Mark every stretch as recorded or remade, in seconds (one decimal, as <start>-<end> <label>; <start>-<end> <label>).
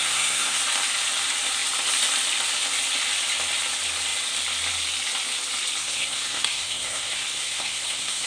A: 0.0-0.6 remade; 0.6-5.8 recorded; 5.8-8.3 remade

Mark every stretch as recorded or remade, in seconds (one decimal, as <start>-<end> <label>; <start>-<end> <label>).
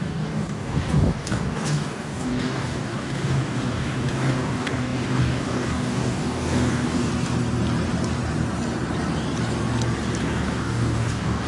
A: 0.0-7.1 remade; 7.1-10.2 recorded; 10.2-11.5 remade